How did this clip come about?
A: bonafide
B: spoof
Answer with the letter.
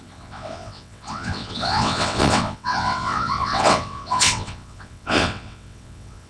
B